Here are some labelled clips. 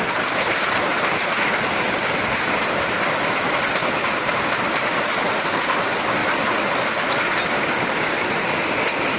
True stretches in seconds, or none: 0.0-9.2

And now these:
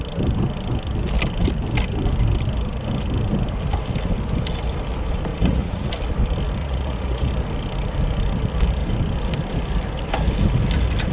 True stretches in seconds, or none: 0.0-5.3; 5.9-6.6; 7.3-11.1

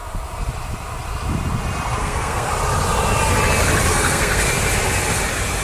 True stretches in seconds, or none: 0.0-2.0; 2.5-3.9; 4.5-5.6

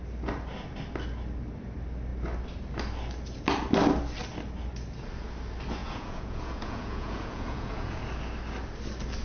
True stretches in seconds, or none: 0.0-5.8; 8.0-9.2

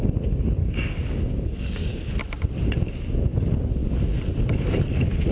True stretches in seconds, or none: 0.0-0.6; 2.1-5.3